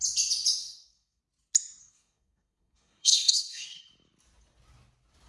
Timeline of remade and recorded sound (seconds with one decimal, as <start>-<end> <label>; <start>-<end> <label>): 0.0-0.6 recorded; 0.6-1.2 remade; 1.2-1.8 recorded; 1.8-3.8 remade; 3.8-5.3 recorded